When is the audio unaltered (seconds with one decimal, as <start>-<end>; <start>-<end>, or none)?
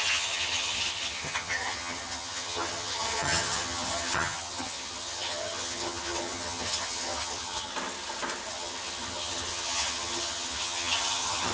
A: 7.7-8.5